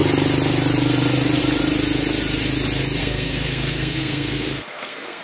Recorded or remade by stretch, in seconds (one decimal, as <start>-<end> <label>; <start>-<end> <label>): 0.0-3.0 recorded; 3.0-5.2 remade